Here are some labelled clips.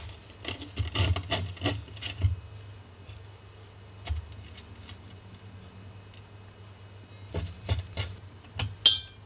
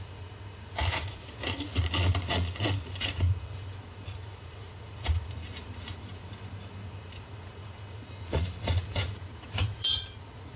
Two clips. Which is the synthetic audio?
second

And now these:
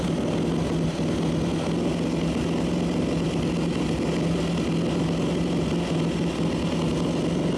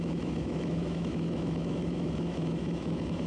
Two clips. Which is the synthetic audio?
second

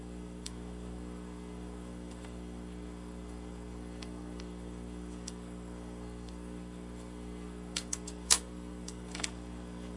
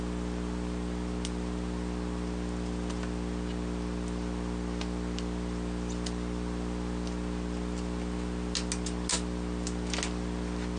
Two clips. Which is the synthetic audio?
first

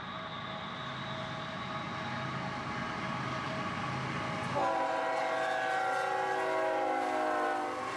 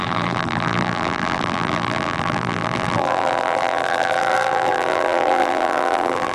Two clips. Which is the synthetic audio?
second